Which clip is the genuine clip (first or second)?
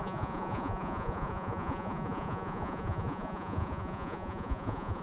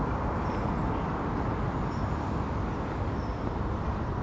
second